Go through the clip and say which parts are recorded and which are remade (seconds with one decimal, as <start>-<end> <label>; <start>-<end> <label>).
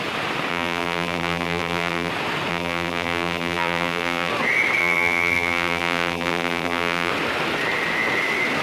0.0-0.5 recorded; 0.5-2.1 remade; 2.1-2.5 recorded; 2.5-4.3 remade; 4.3-4.8 recorded; 4.8-7.1 remade; 7.1-8.6 recorded